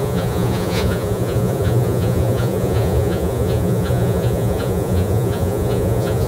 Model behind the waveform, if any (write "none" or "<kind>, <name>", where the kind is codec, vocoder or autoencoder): vocoder, Vocos